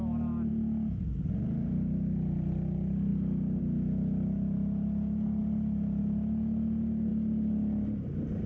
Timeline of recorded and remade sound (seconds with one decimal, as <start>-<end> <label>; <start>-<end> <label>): 0.0-8.5 recorded